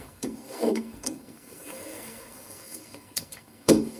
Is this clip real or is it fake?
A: fake